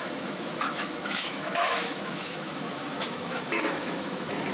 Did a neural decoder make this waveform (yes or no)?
yes